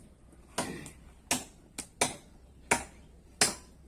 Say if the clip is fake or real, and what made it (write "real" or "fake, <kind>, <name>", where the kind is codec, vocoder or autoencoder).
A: real